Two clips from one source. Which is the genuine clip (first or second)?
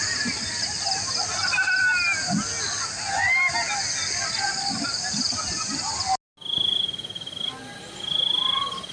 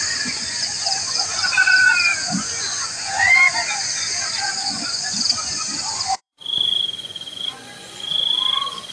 first